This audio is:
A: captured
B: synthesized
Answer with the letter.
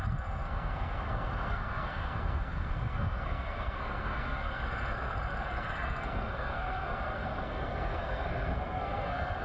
B